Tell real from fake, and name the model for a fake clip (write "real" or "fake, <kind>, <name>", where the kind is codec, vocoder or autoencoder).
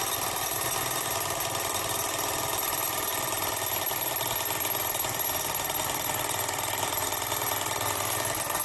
real